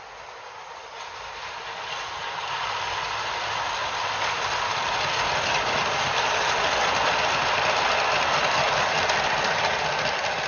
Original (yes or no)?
yes